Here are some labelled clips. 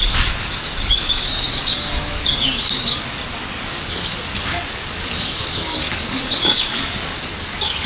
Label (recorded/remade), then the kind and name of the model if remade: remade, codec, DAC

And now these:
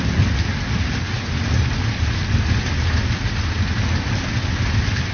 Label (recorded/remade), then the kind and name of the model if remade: recorded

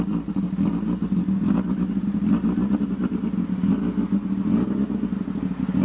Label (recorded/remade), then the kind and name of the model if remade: recorded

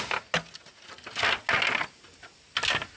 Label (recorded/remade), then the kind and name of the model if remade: recorded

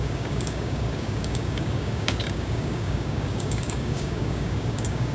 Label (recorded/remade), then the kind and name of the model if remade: remade, codec, DAC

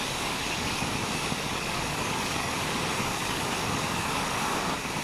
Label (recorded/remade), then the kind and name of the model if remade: remade, codec, DAC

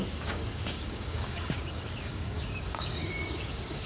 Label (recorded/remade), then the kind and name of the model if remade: remade, codec, DAC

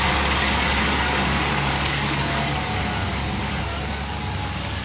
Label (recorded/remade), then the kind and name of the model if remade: remade, codec, DAC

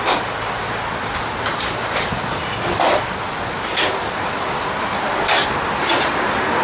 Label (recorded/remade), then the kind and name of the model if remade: recorded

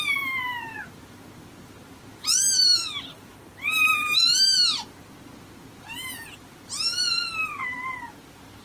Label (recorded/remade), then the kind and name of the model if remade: recorded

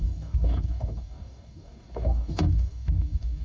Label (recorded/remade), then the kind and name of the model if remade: remade, codec, DAC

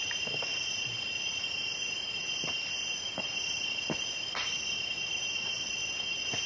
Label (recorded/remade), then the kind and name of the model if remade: recorded